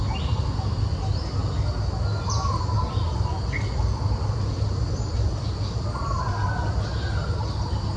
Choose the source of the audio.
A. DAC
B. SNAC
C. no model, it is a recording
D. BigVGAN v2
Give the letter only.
C